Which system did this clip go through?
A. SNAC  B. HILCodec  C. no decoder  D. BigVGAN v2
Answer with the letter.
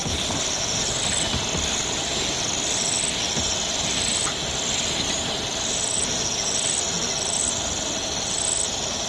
C